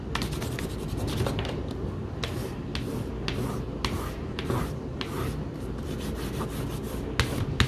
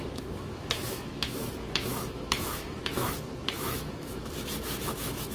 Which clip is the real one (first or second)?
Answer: first